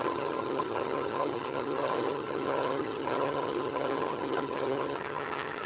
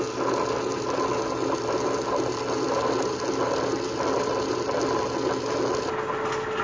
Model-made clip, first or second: first